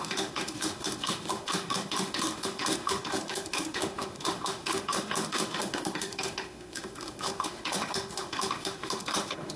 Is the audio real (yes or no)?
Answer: no